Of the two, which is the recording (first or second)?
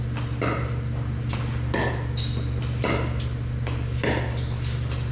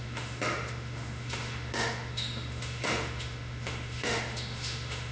first